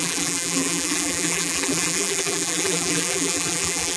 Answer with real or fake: fake